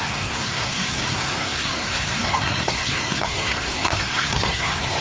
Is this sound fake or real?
fake